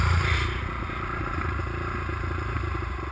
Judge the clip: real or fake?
fake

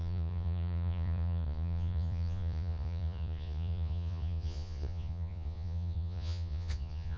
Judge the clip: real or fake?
fake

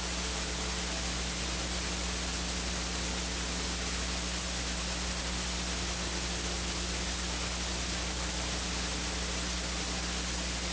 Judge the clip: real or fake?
real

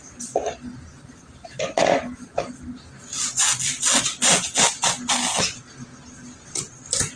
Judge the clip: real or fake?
real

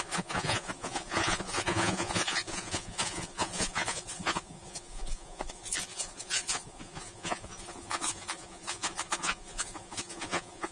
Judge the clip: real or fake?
fake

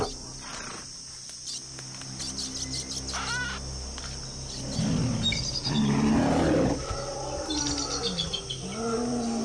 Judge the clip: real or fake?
real